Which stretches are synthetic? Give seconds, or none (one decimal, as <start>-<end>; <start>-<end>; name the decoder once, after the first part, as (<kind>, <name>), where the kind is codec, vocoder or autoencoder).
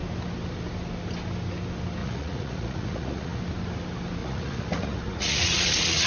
2.0-3.4 (vocoder, Vocos); 4.2-6.1